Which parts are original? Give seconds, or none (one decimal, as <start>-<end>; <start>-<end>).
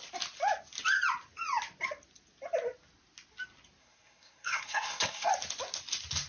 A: 0.0-3.8; 5.3-6.3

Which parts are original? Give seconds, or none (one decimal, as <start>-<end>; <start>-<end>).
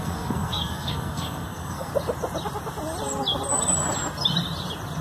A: 1.9-5.0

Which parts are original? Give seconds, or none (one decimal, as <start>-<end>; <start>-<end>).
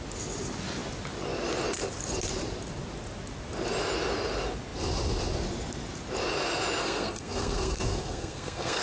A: 0.0-6.8